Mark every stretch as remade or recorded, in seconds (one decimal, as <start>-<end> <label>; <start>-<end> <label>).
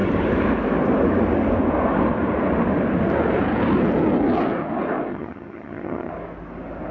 0.0-5.1 recorded; 5.1-6.1 remade; 6.1-6.9 recorded